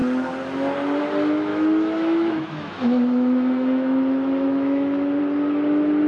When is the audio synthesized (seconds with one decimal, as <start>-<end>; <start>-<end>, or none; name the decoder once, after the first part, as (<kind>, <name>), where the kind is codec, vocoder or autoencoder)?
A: 1.5-5.2 (autoencoder, DAC-VAE)